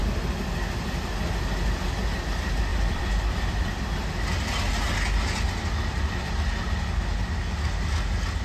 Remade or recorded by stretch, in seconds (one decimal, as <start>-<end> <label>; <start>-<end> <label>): 0.0-2.7 recorded; 2.7-3.6 remade; 3.6-8.4 recorded